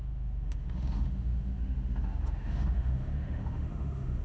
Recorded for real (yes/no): no